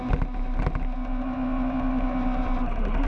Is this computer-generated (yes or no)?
no